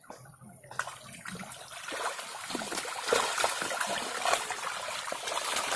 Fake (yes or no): no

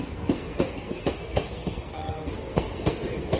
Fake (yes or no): yes